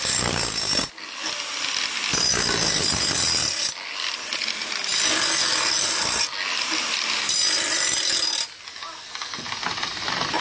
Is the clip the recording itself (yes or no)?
yes